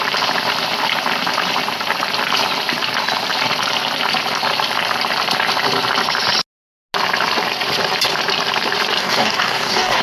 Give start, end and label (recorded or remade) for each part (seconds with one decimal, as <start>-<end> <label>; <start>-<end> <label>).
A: 0.0-9.0 recorded; 9.0-10.0 remade